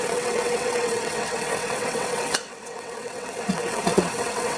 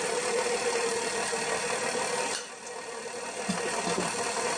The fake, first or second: first